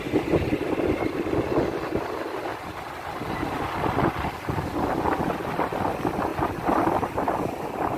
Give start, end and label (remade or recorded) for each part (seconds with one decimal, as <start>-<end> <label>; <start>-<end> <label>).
0.0-8.0 recorded